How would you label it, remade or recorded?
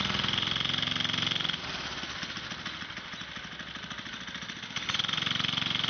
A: recorded